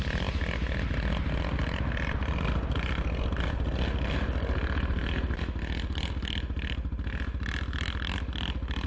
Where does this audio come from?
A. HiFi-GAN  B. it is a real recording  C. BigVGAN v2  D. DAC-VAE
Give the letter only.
B